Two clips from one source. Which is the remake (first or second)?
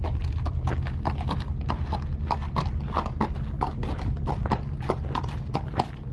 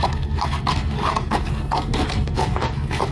second